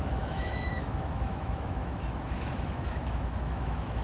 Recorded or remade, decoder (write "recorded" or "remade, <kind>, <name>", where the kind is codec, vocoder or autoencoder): remade, autoencoder, DAC-VAE